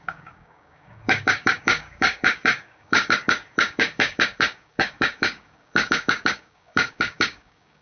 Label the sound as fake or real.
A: fake